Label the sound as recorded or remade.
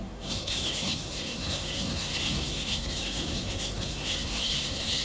remade